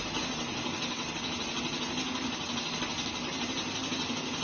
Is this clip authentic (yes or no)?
yes